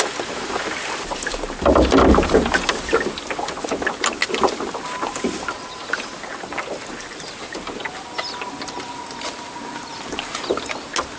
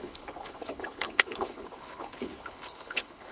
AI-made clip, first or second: second